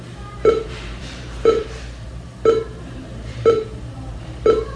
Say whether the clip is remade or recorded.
remade